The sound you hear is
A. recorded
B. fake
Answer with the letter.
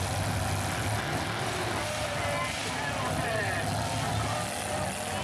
A